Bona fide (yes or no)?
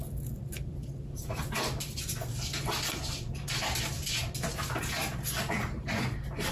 yes